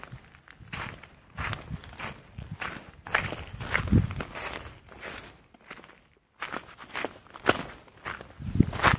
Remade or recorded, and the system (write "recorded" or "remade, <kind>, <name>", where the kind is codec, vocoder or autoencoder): recorded